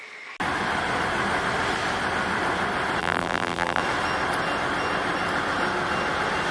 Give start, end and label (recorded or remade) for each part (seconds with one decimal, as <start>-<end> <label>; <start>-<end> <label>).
0.0-3.0 recorded; 3.0-3.8 remade; 3.8-6.5 recorded

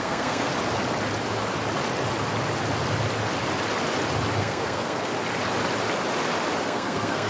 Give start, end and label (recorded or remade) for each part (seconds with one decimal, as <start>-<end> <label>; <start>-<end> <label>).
0.0-0.5 remade; 0.5-4.4 recorded; 4.4-5.1 remade; 5.1-6.6 recorded; 6.6-7.3 remade

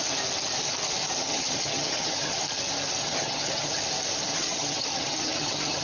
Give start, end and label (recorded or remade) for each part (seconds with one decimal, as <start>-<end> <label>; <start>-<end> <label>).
0.0-1.3 recorded; 1.3-2.4 remade; 2.4-3.0 recorded; 3.0-3.8 remade; 3.8-4.3 recorded; 4.3-5.8 remade

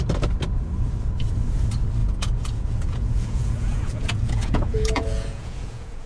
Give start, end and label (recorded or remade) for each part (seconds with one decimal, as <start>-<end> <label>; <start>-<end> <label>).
0.0-2.0 recorded; 2.0-6.1 remade

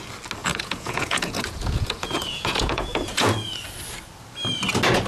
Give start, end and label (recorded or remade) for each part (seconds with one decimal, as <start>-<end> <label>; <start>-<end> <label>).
0.0-0.4 recorded; 0.4-3.5 remade; 3.5-5.1 recorded

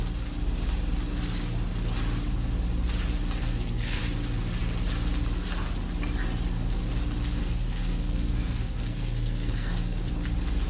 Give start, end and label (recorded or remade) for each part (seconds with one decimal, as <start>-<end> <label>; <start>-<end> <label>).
0.0-3.4 recorded; 3.4-4.0 remade; 4.0-7.4 recorded; 7.4-10.1 remade; 10.1-10.7 recorded